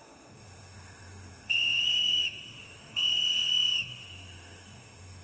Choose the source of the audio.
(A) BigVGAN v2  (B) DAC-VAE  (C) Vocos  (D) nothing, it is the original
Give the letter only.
B